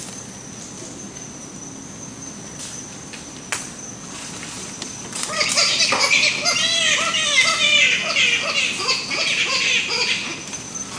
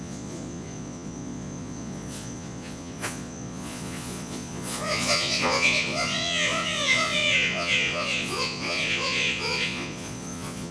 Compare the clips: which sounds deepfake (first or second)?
second